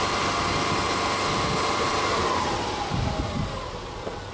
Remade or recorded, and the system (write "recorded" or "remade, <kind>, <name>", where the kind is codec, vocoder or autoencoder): recorded